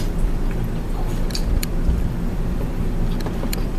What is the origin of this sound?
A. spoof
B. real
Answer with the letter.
A